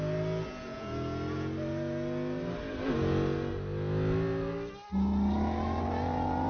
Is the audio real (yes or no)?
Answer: yes